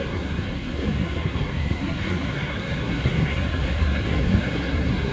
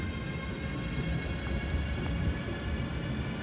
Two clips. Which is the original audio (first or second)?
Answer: second